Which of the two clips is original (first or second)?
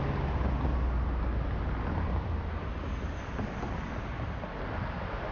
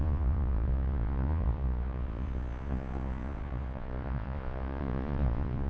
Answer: first